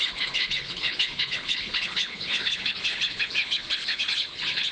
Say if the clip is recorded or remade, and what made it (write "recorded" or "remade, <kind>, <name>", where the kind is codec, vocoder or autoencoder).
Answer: remade, codec, HILCodec